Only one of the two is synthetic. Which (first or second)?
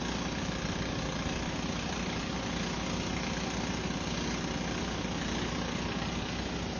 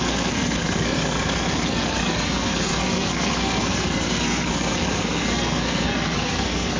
second